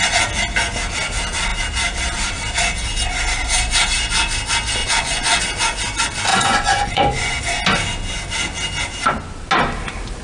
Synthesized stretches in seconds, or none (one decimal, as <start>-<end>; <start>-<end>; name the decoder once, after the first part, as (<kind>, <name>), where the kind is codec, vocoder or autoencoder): 4.8-5.4 (vocoder, Vocos); 6.3-7.4